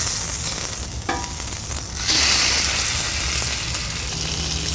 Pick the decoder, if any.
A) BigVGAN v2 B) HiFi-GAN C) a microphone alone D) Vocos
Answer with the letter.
C